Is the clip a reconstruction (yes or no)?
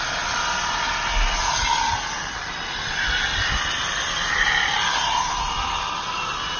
no